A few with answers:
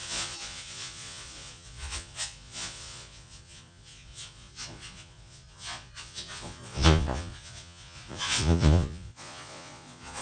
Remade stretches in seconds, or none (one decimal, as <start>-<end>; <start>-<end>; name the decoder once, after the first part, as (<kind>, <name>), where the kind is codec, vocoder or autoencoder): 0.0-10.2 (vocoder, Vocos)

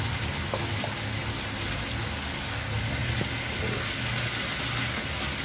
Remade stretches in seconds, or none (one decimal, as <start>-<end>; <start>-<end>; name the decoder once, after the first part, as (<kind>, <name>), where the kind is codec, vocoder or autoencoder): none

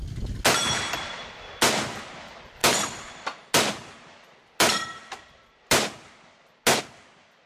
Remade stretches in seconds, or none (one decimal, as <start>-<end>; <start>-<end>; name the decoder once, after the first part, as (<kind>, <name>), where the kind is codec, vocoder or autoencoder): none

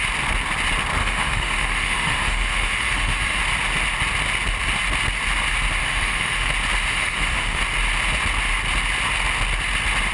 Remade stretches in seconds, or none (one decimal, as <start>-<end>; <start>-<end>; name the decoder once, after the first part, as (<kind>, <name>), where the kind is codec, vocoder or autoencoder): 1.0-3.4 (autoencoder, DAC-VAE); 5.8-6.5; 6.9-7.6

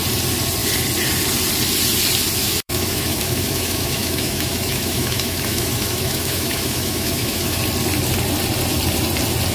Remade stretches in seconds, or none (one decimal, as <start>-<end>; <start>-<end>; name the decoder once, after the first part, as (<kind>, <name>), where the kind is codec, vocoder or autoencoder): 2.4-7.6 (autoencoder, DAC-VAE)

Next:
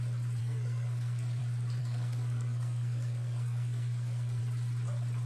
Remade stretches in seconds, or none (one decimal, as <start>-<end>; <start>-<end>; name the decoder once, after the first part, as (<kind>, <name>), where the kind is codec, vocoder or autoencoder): 0.4-1.4 (codec, SNAC); 1.8-4.4

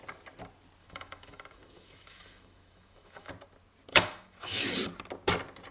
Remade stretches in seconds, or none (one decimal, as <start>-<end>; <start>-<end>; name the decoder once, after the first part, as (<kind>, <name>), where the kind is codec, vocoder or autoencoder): 0.8-3.3 (autoencoder, DAC-VAE); 3.9-4.7